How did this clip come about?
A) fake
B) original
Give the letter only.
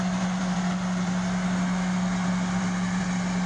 B